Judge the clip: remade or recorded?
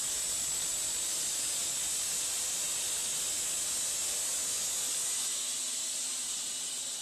recorded